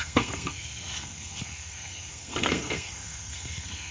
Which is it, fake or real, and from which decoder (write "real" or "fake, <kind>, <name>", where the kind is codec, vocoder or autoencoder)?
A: fake, codec, SNAC